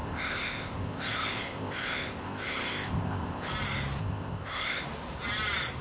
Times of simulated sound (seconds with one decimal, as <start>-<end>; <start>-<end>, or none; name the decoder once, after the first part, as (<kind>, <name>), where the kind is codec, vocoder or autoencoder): 0.0-3.5 (codec, ZipCodec); 4.0-4.8